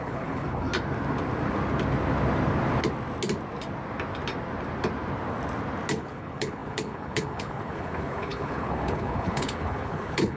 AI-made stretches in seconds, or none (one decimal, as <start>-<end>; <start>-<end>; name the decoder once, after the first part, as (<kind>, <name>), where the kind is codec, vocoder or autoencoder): 0.0-0.7 (codec, HILCodec); 6.0-10.4